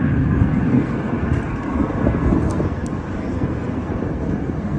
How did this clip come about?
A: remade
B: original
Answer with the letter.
A